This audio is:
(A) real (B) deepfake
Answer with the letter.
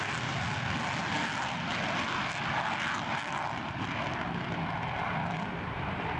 A